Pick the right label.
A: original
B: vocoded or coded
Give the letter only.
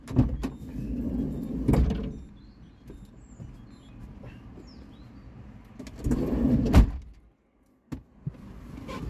A